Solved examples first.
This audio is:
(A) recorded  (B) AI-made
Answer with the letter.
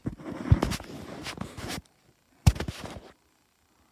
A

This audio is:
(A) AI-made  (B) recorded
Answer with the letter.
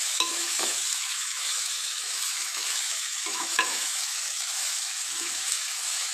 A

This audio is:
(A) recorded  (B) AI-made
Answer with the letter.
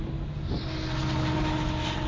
A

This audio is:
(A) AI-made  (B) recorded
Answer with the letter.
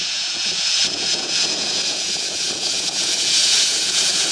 A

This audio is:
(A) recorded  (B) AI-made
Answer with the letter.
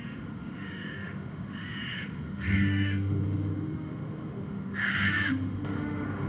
B